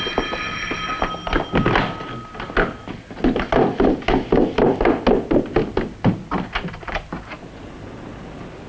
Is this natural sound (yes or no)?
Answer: yes